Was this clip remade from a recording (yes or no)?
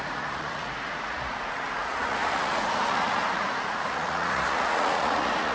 yes